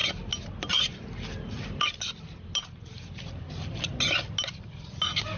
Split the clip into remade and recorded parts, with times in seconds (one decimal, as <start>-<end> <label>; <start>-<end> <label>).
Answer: 0.0-5.4 recorded